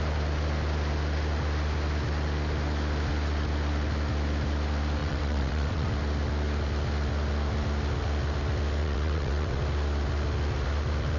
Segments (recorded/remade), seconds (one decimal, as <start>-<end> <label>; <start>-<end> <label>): 0.0-5.0 recorded; 5.0-5.9 remade; 5.9-8.8 recorded; 8.8-9.6 remade; 9.6-11.2 recorded